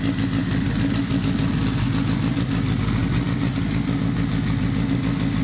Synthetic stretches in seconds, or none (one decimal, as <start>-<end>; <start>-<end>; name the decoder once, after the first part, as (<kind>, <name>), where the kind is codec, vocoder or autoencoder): none